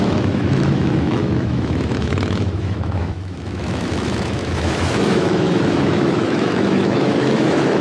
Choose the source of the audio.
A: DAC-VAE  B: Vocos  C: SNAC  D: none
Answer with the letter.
A